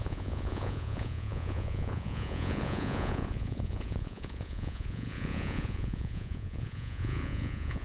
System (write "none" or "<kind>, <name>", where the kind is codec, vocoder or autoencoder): vocoder, Vocos